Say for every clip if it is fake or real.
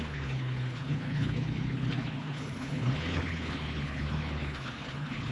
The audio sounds fake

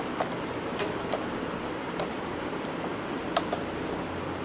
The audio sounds real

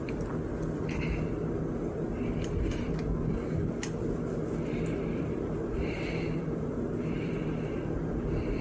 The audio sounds real